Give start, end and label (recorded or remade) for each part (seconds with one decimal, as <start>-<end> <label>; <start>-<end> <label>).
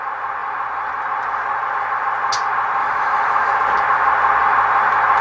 0.0-2.8 recorded; 2.8-3.5 remade; 3.5-5.2 recorded